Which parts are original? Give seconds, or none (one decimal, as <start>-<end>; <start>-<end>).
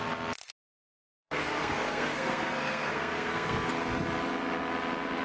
0.0-0.7; 3.7-5.2